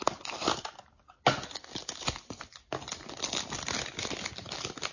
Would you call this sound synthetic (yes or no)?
no